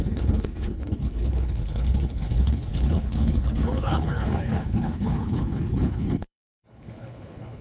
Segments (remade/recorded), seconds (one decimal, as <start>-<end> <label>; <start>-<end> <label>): 0.0-7.6 remade